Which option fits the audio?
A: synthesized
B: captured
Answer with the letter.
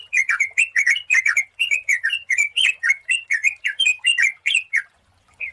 A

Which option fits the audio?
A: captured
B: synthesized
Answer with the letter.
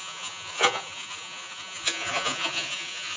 B